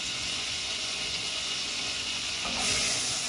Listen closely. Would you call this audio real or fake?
fake